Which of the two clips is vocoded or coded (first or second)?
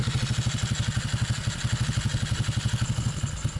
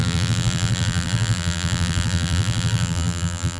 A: second